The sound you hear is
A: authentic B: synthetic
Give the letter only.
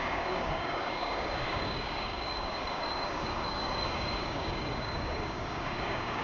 B